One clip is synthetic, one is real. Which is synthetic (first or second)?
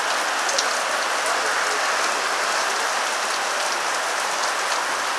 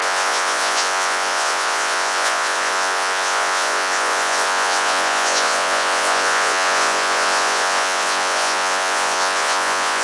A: second